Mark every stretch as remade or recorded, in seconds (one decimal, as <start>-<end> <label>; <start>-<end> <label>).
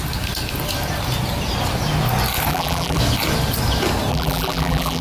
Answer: 0.0-2.5 recorded; 2.5-3.0 remade; 3.0-4.1 recorded; 4.1-5.0 remade